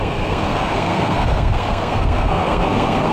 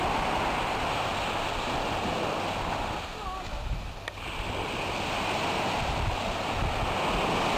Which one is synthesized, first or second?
first